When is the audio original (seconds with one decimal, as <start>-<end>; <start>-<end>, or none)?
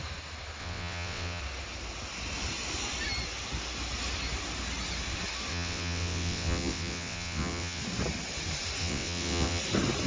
0.0-0.6; 1.4-5.5; 7.8-8.8; 9.6-10.1